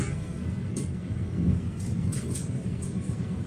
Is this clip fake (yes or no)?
yes